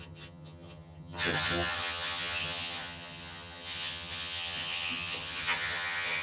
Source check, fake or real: fake